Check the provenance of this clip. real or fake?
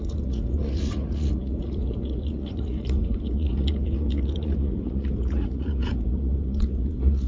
fake